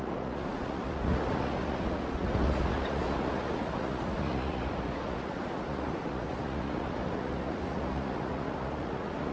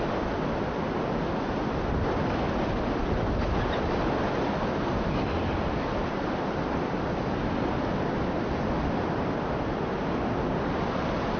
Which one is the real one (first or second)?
second